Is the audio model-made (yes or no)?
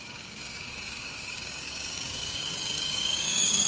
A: yes